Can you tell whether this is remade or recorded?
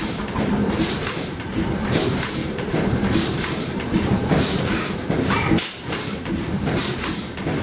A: remade